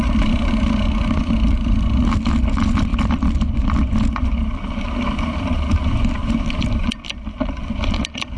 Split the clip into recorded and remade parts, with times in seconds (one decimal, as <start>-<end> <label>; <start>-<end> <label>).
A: 0.0-8.4 recorded